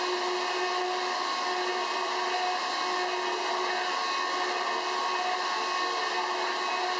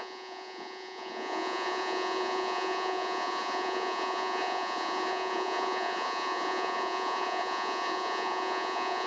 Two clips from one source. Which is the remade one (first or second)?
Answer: second